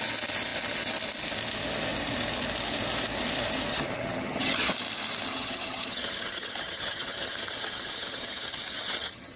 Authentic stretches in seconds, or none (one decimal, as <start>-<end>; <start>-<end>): 0.0-3.7; 4.7-5.3